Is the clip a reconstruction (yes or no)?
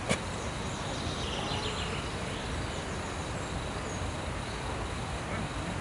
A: no